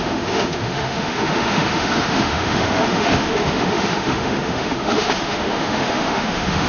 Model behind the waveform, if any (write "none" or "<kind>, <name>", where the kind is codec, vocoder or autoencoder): autoencoder, DAC-VAE